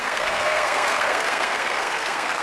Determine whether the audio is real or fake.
fake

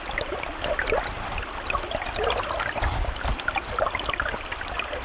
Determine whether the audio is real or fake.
fake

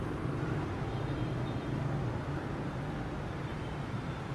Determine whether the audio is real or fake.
real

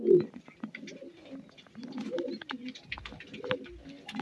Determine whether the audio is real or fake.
real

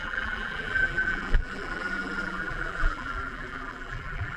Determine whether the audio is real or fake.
fake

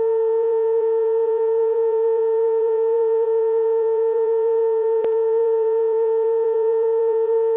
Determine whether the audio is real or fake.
fake